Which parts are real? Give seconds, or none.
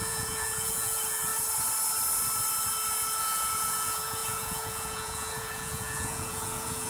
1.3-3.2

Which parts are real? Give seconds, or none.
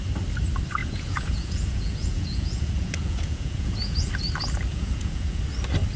0.0-0.8; 4.1-4.7; 5.4-6.0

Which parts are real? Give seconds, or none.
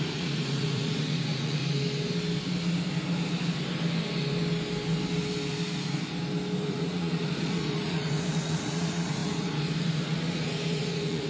1.6-6.7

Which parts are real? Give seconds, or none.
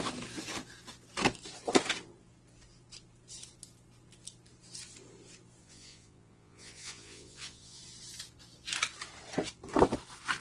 0.0-5.6; 7.8-10.4